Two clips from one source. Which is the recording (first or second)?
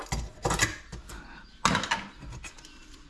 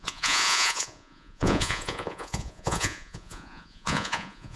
first